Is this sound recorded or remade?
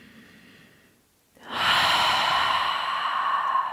recorded